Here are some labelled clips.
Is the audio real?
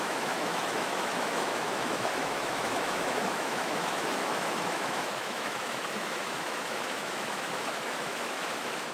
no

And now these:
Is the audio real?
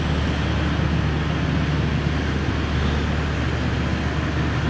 yes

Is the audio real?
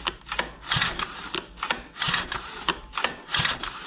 yes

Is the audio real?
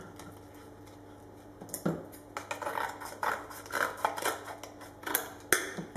yes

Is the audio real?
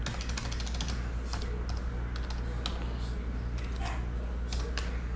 yes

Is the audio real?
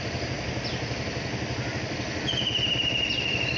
yes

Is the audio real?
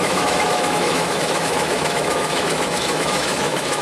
no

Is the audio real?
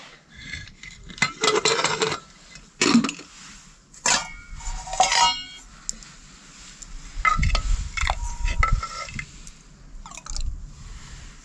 yes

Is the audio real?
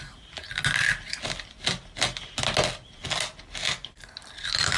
yes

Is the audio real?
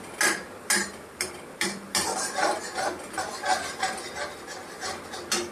yes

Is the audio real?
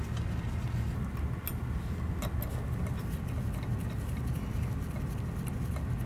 yes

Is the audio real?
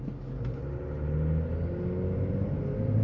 yes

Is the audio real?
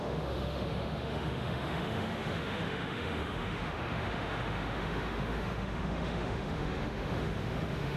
no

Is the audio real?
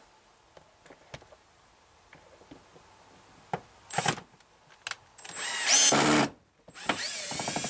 yes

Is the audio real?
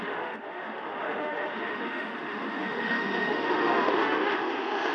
no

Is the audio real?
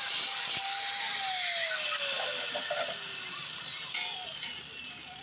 yes